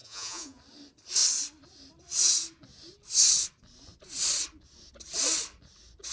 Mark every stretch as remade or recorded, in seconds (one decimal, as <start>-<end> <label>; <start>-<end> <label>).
0.0-0.6 remade; 0.6-6.1 recorded